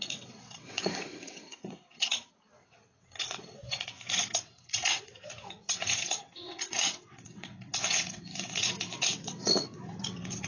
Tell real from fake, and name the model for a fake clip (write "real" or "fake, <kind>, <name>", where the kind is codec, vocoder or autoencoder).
fake, vocoder, WaveNeXt